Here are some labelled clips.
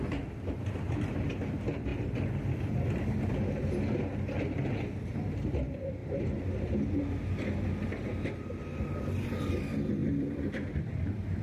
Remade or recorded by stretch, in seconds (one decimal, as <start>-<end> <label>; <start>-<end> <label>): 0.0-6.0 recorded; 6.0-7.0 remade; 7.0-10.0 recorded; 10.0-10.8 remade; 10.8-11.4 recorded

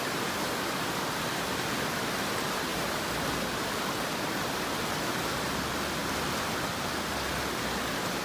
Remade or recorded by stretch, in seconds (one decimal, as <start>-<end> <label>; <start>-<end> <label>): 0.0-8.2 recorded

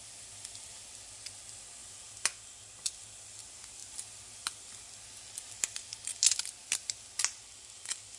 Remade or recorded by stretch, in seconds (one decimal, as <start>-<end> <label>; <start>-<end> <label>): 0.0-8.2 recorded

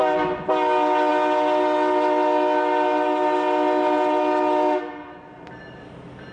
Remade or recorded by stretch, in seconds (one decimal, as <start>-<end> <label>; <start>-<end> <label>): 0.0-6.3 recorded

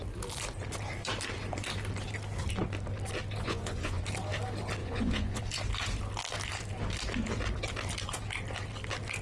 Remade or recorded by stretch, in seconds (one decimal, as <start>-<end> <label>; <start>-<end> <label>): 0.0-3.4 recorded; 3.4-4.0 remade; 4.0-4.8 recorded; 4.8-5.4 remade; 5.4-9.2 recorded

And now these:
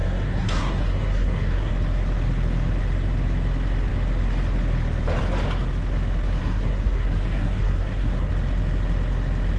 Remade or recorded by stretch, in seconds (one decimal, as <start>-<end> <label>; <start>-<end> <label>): 0.0-1.7 remade; 1.7-6.4 recorded; 6.4-8.3 remade; 8.3-9.6 recorded